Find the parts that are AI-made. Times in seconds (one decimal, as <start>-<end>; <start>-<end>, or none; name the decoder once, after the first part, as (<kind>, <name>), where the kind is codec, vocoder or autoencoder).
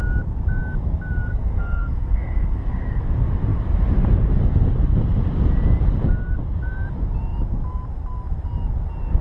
1.3-3.0 (codec, SNAC)